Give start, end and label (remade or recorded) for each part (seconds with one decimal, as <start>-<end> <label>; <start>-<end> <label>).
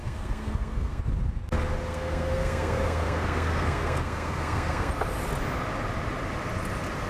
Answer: 0.0-1.0 remade; 1.0-1.9 recorded; 1.9-4.9 remade; 4.9-7.1 recorded